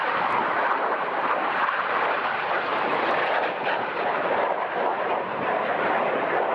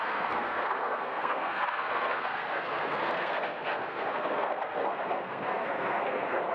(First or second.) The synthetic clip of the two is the second